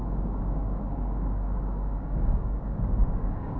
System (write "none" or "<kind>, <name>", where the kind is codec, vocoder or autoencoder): codec, DAC